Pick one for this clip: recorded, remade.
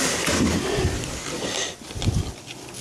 recorded